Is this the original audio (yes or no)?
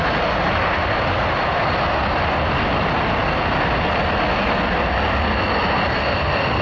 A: yes